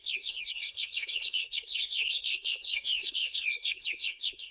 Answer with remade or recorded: remade